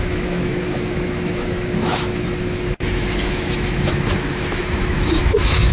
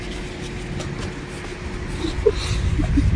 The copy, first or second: first